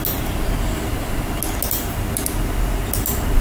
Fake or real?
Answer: real